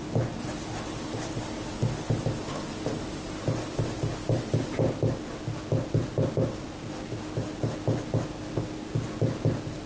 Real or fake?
real